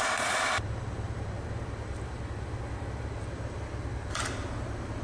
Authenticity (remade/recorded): recorded